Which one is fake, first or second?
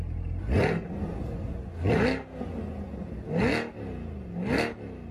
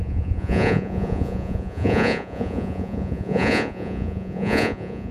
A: second